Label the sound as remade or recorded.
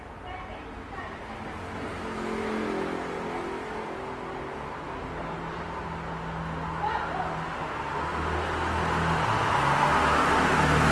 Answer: recorded